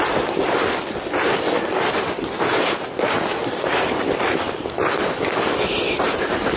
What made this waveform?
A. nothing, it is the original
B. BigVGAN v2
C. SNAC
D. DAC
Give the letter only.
A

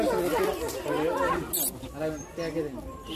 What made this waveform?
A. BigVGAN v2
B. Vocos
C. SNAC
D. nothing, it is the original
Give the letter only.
D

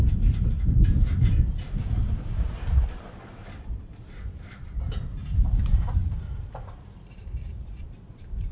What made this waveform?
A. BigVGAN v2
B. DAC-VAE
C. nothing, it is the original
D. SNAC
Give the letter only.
A